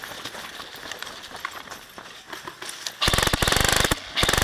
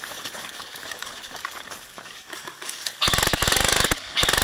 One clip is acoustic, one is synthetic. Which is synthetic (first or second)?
second